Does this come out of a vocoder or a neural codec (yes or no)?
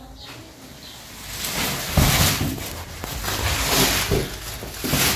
no